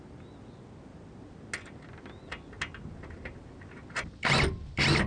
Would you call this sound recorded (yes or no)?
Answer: yes